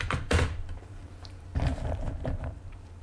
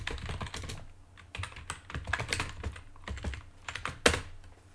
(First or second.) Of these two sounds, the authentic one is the second